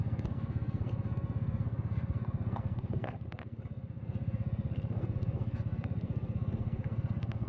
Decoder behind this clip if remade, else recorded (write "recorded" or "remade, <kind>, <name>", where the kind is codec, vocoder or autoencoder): remade, codec, SNAC